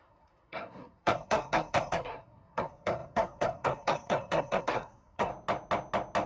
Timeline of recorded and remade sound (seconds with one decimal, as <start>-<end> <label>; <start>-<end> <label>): 0.0-5.3 remade; 5.3-6.3 recorded